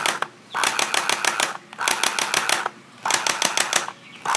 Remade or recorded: recorded